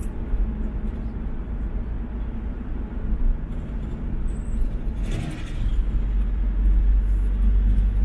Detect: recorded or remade recorded